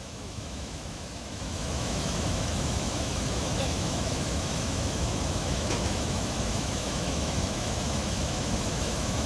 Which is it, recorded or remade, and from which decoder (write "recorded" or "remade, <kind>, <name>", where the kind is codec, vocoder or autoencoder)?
remade, autoencoder, DAC-VAE